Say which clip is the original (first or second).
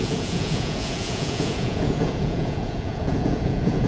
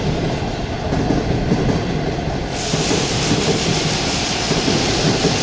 second